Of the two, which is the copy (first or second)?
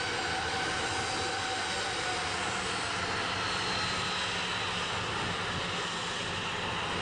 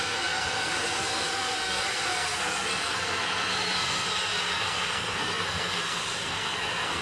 second